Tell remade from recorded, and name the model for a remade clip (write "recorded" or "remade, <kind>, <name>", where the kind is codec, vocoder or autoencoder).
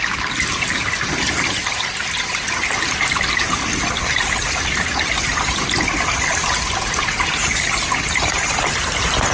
remade, vocoder, BigVGAN v2